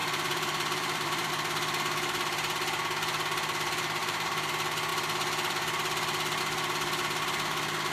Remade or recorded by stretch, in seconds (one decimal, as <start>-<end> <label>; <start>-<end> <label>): 0.0-1.3 remade; 1.3-4.0 recorded; 4.0-4.5 remade; 4.5-7.9 recorded